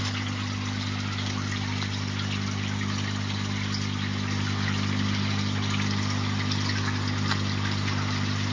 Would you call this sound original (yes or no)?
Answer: yes